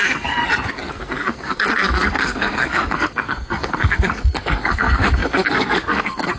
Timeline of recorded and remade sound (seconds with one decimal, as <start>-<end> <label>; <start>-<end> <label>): 0.0-0.4 remade; 0.4-0.9 recorded; 0.9-6.4 remade